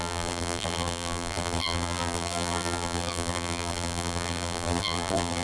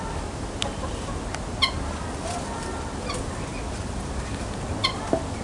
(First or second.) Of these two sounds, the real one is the second